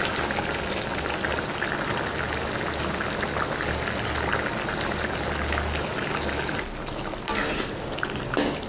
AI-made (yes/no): no